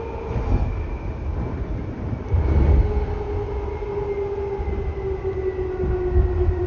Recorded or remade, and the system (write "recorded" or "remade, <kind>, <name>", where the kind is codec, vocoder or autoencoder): recorded